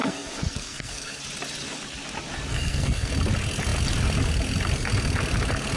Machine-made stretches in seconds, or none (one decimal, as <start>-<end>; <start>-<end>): 0.0-1.2; 2.5-3.1